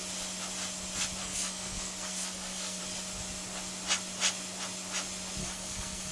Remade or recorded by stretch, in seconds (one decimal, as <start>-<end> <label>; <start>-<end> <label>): 0.0-1.2 recorded; 1.2-2.8 remade; 2.8-5.4 recorded; 5.4-6.1 remade